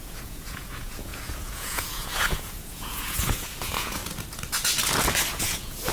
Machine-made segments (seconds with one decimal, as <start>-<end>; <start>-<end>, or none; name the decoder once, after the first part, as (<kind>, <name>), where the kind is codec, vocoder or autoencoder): 0.0-4.0 (vocoder, Vocos); 5.3-5.9